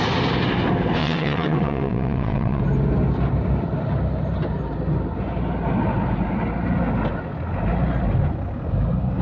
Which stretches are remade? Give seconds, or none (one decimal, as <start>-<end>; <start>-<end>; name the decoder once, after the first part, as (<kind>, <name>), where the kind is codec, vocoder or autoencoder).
1.0-2.6 (vocoder, WaveNeXt)

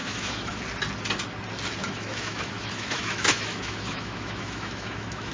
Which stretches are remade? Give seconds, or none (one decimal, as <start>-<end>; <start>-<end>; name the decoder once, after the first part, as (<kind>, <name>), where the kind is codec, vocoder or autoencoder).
0.0-0.6 (autoencoder, DAC-VAE); 1.8-5.3

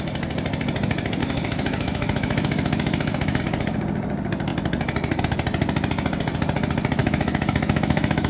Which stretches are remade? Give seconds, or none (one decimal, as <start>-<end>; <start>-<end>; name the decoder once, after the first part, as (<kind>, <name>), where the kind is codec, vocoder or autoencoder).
1.2-3.4 (autoencoder, DAC-VAE); 7.0-8.3

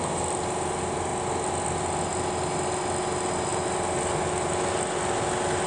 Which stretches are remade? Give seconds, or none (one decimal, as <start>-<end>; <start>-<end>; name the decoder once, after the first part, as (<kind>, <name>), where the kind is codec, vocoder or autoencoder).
none